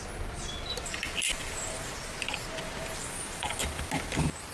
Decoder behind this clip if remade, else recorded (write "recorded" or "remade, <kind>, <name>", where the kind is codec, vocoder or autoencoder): recorded